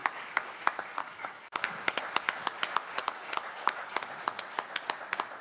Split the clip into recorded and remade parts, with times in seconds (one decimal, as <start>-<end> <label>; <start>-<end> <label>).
0.0-0.6 remade; 0.6-1.0 recorded; 1.0-2.0 remade; 2.0-3.0 recorded; 3.0-4.0 remade; 4.0-5.4 recorded